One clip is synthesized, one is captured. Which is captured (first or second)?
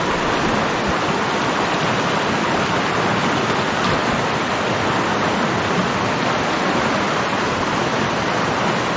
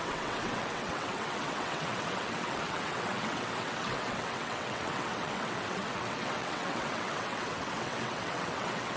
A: first